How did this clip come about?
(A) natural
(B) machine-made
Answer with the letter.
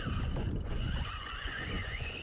B